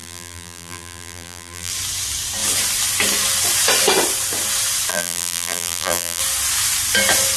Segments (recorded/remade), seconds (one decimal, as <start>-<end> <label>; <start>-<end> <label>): 0.0-1.7 remade; 1.7-4.9 recorded; 4.9-6.2 remade; 6.2-7.4 recorded